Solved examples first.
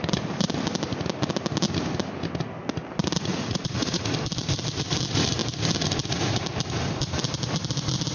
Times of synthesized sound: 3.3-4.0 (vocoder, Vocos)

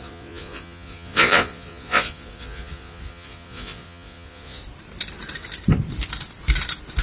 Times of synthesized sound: 0.0-4.6 (vocoder, Vocos)